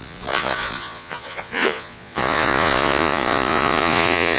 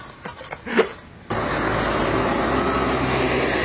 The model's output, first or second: first